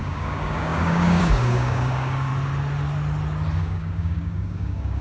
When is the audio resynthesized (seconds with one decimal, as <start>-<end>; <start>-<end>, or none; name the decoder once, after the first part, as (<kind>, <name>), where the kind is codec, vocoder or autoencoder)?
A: 0.0-2.3 (codec, DAC); 3.6-5.0